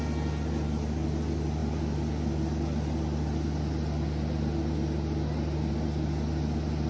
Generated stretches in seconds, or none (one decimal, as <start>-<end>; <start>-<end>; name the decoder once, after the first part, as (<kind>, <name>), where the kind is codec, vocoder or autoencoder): none